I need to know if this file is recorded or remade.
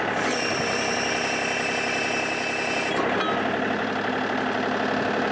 recorded